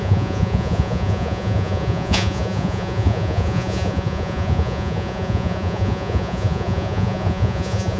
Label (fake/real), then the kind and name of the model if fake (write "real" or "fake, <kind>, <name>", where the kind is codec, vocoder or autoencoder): fake, vocoder, Vocos